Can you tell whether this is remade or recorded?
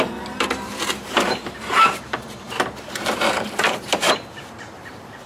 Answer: remade